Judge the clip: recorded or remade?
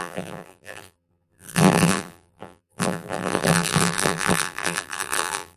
remade